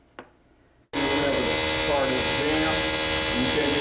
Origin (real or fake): real